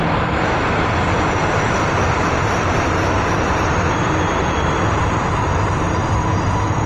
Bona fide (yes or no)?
no